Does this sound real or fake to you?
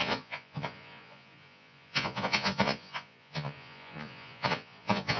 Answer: fake